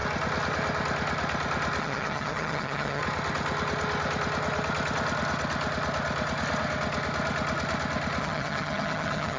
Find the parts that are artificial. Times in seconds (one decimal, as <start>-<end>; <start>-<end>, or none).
1.8-3.0; 8.2-9.4